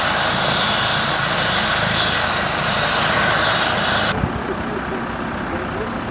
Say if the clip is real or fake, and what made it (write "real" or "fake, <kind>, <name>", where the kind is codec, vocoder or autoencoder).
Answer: real